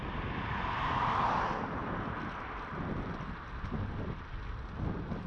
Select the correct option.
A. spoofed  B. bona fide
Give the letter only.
B